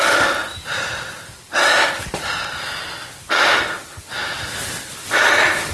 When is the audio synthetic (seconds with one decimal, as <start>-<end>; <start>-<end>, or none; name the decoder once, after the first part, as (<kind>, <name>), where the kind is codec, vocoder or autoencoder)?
none